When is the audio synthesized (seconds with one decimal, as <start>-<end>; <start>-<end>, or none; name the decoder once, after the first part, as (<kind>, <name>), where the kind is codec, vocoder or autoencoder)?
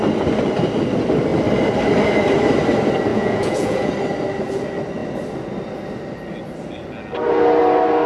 3.1-3.9 (vocoder, Vocos)